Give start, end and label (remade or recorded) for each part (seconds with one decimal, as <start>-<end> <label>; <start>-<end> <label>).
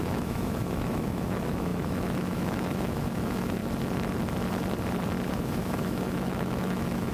0.0-3.6 remade; 3.6-5.3 recorded; 5.3-7.1 remade